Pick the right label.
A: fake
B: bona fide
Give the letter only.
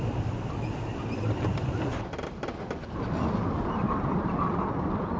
B